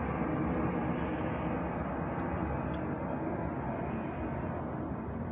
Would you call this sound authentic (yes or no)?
yes